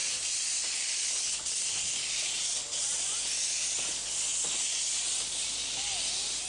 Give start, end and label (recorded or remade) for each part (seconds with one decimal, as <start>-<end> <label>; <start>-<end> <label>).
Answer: 0.0-3.9 remade; 3.9-6.5 recorded